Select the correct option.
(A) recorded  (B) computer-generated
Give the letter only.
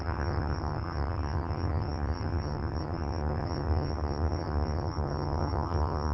B